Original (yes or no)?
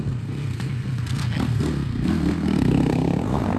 no